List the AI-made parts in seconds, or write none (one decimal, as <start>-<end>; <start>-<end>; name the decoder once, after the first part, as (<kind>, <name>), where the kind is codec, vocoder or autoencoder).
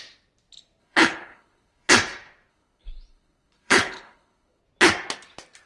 0.8-1.9 (codec, HILCodec); 2.5-4.6